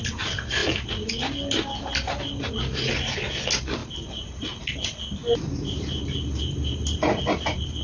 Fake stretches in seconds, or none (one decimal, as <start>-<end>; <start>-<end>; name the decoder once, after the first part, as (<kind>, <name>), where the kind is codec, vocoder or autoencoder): 3.8-4.6 (vocoder, BigVGAN v2); 5.2-7.2